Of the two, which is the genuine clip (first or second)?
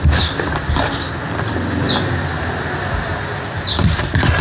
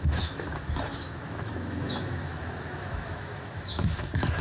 first